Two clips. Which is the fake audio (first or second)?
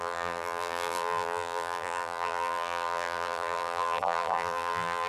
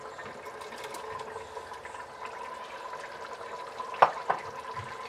first